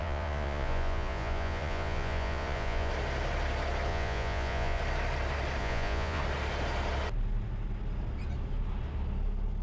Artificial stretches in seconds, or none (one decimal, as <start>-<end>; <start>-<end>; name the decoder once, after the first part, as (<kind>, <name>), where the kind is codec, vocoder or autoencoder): 0.0-2.9 (vocoder, Vocos); 3.9-4.8; 5.6-6.2